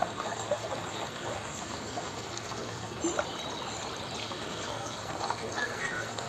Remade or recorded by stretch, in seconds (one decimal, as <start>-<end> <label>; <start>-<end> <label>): 0.0-3.0 remade; 3.0-4.2 recorded; 4.2-6.3 remade